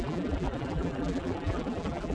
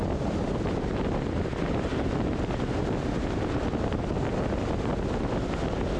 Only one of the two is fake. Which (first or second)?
first